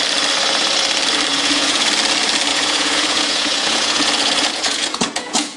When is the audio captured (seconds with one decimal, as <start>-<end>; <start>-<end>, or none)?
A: 0.0-1.3; 1.9-2.5